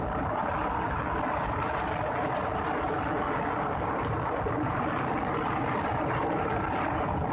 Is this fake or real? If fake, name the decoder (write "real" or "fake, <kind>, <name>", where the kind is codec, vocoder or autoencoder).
real